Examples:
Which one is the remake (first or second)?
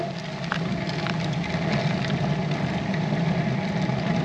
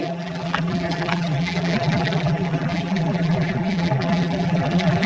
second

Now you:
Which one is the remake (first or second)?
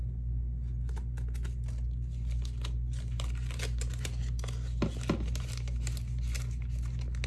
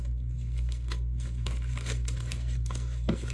second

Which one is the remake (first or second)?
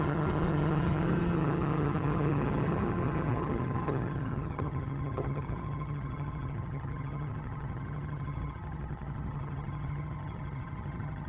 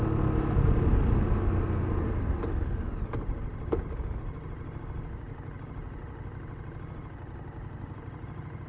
first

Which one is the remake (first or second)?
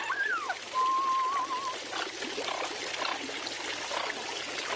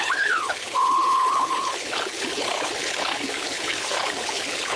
second